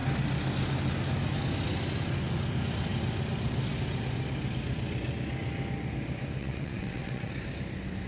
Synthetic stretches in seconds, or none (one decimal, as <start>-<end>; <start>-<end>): 6.4-7.3